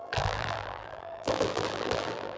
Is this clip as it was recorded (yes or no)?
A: no